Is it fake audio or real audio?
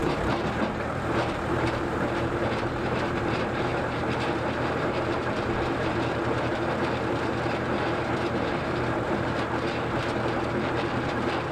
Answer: fake